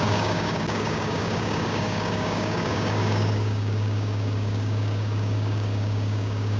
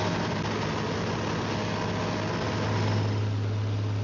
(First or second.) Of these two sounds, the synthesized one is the first